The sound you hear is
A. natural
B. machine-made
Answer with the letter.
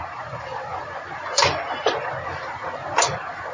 B